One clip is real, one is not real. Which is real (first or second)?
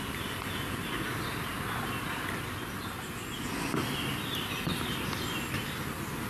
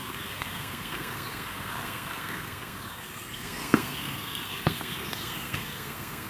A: first